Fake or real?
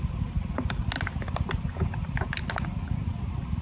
real